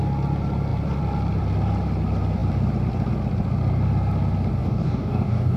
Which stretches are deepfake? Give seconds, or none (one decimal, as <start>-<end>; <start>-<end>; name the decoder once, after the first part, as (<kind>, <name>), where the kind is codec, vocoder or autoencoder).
4.6-5.6 (codec, DAC)